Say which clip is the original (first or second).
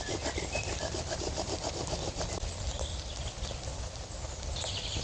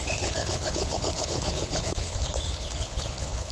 first